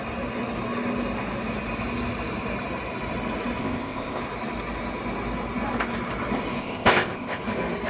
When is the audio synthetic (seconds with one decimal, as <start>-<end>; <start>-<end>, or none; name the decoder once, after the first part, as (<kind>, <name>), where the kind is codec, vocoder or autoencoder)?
3.6-4.2 (codec, ZipCodec); 6.6-7.4